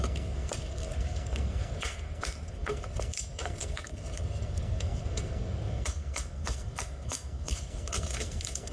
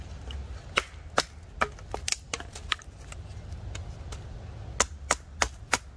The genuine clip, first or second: second